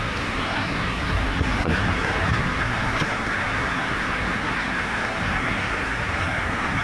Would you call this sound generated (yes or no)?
yes